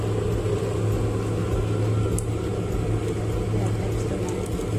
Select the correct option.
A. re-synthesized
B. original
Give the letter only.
B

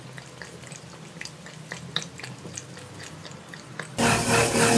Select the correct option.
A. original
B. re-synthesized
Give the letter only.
A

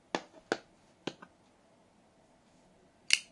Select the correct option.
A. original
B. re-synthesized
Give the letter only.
A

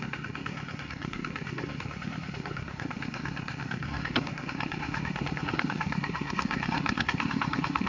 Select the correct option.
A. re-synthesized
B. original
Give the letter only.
A